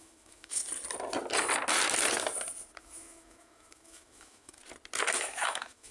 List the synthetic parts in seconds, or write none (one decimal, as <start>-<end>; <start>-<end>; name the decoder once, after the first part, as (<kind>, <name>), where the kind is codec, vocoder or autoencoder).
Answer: 0.0-0.6 (autoencoder, DAC-VAE); 2.8-4.6; 5.2-5.9